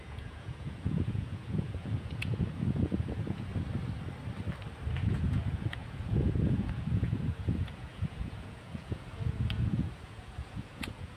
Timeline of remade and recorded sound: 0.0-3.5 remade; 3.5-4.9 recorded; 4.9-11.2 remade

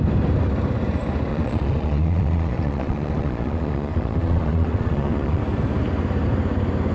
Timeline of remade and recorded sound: 0.0-1.3 recorded; 1.3-5.4 remade; 5.4-6.9 recorded

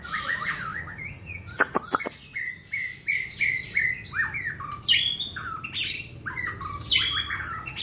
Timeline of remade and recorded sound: 0.0-2.6 remade; 2.6-7.3 recorded; 7.3-7.8 remade

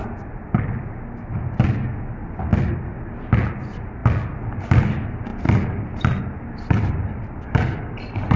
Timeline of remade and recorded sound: 0.0-8.4 recorded

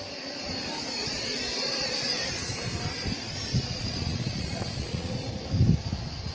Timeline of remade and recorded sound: 0.0-1.0 recorded; 1.0-2.3 remade; 2.3-3.5 recorded; 3.5-5.1 remade; 5.1-6.3 recorded

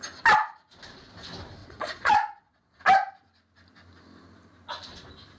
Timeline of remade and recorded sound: 0.0-1.6 recorded; 1.6-2.8 remade; 2.8-5.4 recorded